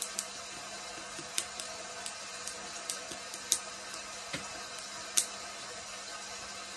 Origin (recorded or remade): recorded